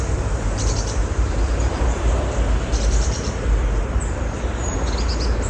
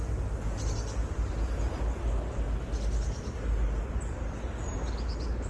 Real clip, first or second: second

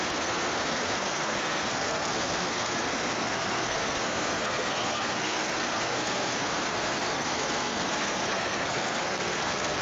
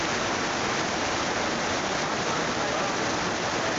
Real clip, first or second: second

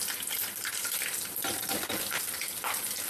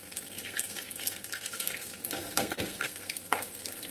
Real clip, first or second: first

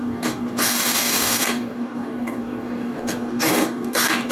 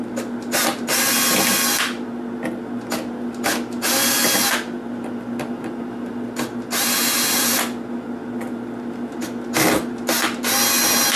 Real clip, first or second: second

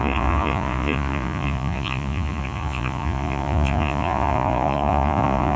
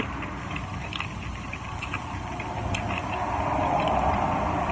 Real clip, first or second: second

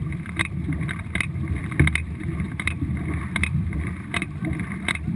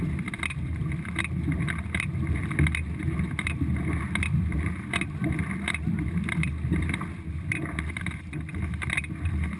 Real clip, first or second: second